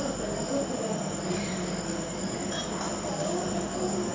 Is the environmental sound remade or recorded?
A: recorded